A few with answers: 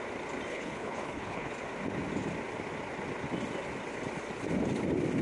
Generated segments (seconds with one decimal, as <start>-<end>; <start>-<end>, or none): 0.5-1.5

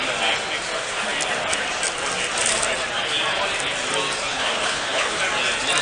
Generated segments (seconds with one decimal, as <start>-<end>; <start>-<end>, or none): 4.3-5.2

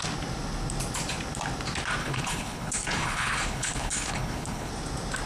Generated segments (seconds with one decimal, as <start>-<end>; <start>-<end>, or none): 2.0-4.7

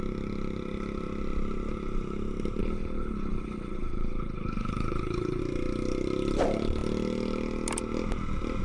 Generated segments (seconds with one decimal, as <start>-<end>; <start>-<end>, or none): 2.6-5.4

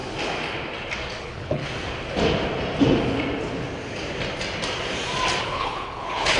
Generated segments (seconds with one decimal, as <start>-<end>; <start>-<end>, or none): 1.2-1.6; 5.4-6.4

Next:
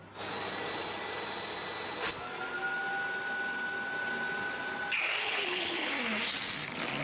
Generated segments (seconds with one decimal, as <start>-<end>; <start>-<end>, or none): 5.2-5.9